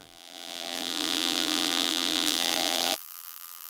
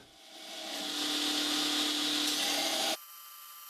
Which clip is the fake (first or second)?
first